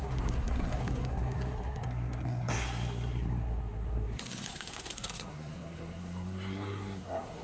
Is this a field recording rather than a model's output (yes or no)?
no